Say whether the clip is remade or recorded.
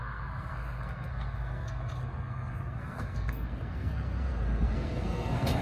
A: remade